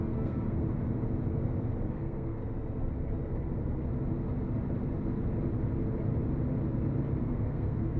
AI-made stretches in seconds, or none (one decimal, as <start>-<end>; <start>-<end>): 0.0-0.6; 1.9-2.4; 7.2-8.0